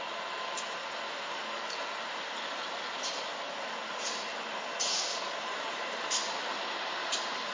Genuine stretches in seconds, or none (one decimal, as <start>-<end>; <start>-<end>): 0.0-5.1; 6.6-7.0